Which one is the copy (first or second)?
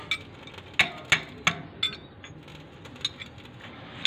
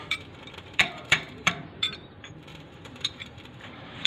second